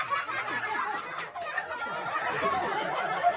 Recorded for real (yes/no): yes